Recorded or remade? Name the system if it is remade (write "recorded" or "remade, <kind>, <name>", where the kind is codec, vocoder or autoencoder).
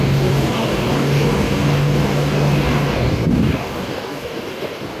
remade, codec, DAC